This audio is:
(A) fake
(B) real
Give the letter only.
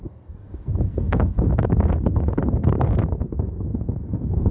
A